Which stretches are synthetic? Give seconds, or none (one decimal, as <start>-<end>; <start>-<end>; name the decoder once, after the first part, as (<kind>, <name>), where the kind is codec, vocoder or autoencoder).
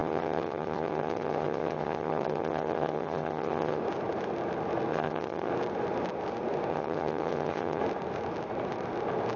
0.0-3.8 (vocoder, HiFi-GAN); 4.9-5.5; 6.7-7.8